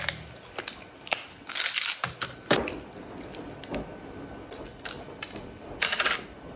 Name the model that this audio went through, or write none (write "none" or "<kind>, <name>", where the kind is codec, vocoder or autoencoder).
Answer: none